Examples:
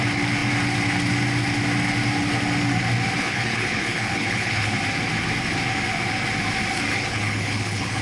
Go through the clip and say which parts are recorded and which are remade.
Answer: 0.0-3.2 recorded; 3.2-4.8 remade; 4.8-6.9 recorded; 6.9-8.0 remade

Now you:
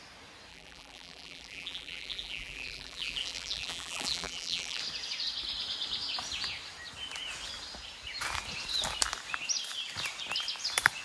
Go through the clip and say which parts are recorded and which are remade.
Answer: 0.0-0.5 recorded; 0.5-4.8 remade; 4.8-11.0 recorded